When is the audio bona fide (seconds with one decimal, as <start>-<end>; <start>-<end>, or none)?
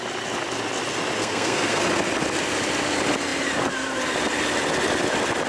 0.0-1.2; 1.8-5.5